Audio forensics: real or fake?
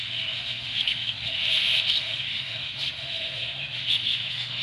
fake